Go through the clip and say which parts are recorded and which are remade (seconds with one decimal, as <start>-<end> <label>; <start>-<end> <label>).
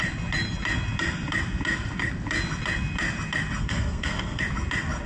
0.0-3.6 recorded; 3.6-4.4 remade; 4.4-5.1 recorded